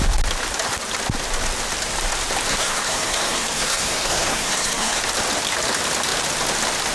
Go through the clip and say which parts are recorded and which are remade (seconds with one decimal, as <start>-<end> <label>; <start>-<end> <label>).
0.0-2.5 recorded; 2.5-5.0 remade; 5.0-6.9 recorded